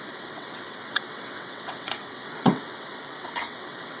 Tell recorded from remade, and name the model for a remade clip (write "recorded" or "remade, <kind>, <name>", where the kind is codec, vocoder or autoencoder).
remade, vocoder, WaveNeXt